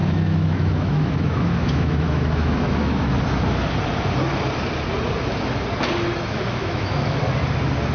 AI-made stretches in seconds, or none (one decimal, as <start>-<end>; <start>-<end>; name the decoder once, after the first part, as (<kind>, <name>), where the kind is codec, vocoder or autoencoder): 0.0-3.1 (autoencoder, DAC-VAE); 6.3-7.2